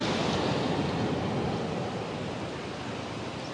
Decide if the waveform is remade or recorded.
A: recorded